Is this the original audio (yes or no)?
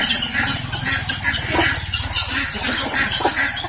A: yes